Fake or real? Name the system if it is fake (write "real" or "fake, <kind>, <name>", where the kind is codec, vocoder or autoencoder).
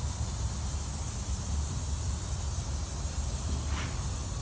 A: real